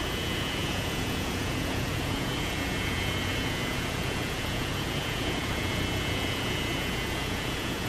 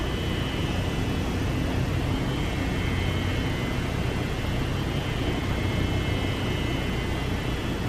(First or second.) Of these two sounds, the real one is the second